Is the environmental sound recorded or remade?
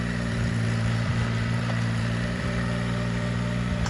remade